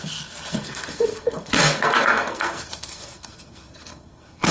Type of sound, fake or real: fake